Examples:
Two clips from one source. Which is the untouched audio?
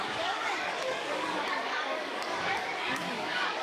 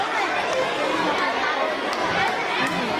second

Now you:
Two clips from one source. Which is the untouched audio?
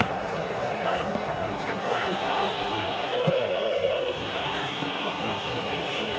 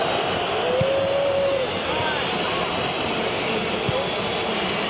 second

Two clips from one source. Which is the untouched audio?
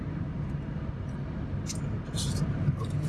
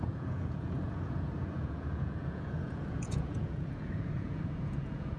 first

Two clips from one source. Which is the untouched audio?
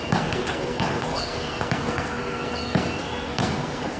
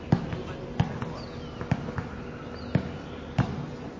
second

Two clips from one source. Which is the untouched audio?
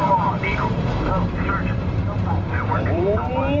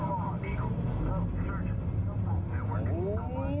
second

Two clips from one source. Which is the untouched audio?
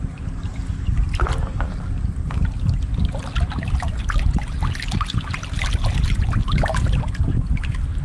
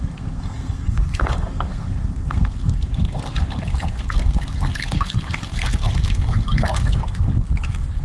first